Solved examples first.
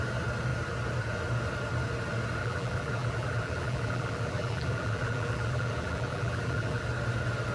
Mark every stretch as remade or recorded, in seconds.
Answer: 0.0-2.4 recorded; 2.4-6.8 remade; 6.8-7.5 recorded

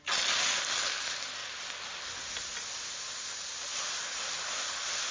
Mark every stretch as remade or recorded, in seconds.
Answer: 0.0-5.1 recorded